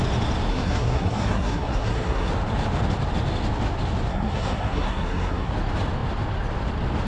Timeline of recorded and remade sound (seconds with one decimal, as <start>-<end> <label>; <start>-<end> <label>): 0.0-0.5 recorded; 0.5-2.3 remade; 2.3-4.1 recorded; 4.1-5.5 remade; 5.5-7.1 recorded